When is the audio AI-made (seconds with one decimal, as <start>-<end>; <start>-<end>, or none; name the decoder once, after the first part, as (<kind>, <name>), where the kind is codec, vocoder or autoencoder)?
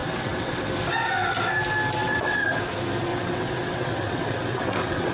0.0-0.6 (vocoder, WaveNeXt); 2.0-2.6; 3.1-5.1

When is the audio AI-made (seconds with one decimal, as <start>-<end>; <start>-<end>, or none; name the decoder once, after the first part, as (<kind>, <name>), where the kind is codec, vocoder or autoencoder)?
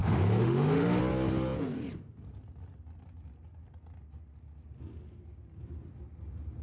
0.0-1.0 (autoencoder, DAC-VAE)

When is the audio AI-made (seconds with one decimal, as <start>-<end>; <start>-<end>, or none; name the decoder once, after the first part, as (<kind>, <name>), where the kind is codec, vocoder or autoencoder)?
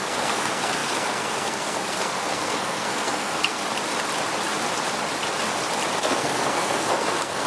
0.0-3.6 (codec, SNAC); 6.0-7.5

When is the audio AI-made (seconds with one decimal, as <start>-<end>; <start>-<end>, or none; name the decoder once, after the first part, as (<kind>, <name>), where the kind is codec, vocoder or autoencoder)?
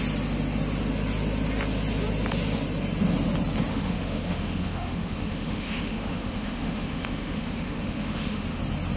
3.7-8.6 (autoencoder, DAC-VAE)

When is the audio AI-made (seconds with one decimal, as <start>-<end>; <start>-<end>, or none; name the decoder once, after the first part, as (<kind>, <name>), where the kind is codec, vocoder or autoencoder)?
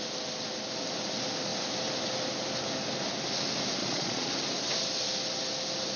3.8-4.3 (vocoder, Vocos)